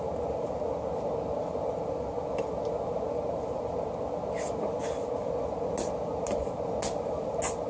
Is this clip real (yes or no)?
yes